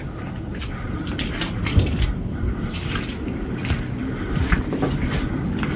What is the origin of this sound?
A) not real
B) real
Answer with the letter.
B